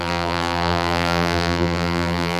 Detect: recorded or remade remade